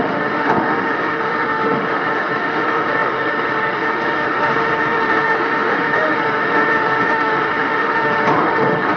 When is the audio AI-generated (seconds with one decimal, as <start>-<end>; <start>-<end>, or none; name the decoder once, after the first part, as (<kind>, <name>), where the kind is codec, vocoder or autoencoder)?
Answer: 0.0-9.0 (autoencoder, DAC-VAE)